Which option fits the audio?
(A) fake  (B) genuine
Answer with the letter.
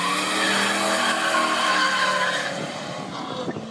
B